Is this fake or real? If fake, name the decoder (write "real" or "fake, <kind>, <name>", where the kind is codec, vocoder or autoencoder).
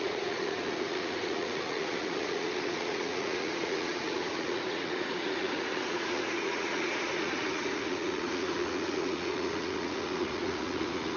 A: fake, vocoder, Vocos